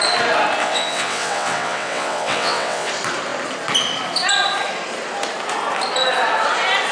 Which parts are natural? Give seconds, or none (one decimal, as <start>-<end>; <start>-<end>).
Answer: 0.0-0.6; 2.9-6.9